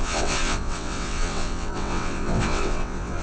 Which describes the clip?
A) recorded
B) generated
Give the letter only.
B